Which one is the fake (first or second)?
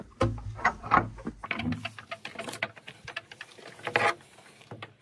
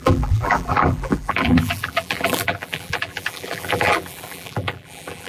second